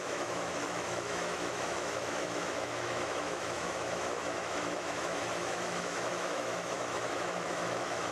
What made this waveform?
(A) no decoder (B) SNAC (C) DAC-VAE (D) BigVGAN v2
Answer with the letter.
C